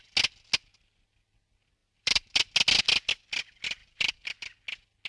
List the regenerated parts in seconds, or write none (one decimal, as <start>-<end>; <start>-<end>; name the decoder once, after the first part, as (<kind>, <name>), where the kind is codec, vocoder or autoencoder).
1.8-2.5 (vocoder, BigVGAN v2); 3.8-4.6